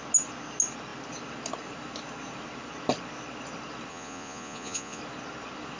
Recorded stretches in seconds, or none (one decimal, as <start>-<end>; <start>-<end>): 0.0-3.9; 5.0-5.8